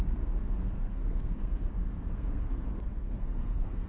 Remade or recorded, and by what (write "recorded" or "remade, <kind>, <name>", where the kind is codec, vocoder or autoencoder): remade, codec, SNAC